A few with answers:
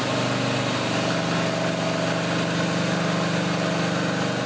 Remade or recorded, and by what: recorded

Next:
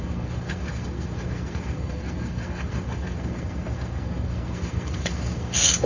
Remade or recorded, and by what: remade, codec, SNAC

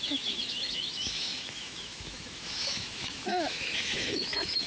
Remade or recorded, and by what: remade, autoencoder, DAC-VAE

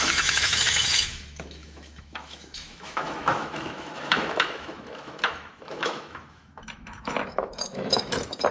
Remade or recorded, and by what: remade, autoencoder, DAC-VAE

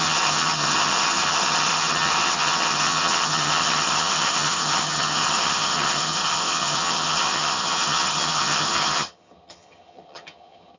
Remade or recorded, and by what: remade, vocoder, HiFi-GAN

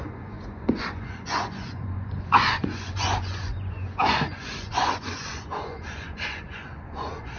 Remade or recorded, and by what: remade, vocoder, Vocos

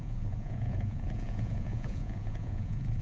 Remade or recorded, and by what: remade, vocoder, Vocos